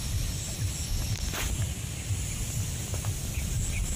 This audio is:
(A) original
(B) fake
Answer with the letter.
A